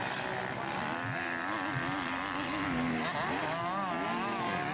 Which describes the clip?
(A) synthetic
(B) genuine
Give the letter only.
B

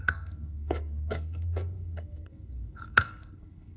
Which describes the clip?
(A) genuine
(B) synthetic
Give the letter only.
B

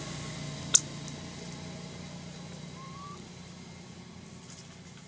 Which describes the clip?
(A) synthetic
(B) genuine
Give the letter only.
B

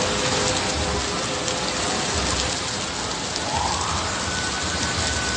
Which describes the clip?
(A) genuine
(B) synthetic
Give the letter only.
A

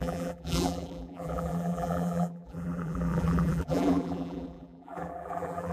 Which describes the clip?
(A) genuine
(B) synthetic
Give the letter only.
B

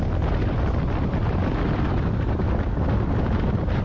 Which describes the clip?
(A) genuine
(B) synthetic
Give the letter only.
A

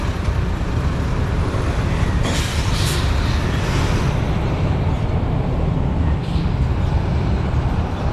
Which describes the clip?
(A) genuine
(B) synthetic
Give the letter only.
B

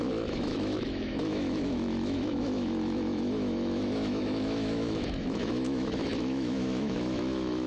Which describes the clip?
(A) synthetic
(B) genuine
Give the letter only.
A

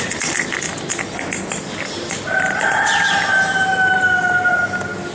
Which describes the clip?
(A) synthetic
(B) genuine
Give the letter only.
B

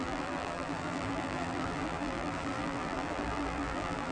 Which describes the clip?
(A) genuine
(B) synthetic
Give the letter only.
B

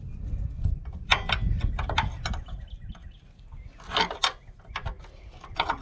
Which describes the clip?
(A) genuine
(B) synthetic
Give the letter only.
A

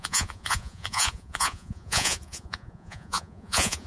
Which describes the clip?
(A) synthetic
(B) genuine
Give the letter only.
A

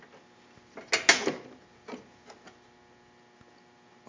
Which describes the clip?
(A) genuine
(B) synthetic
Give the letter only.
A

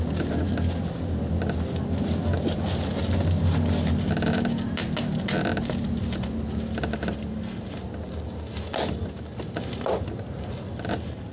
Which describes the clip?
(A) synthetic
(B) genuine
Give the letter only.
B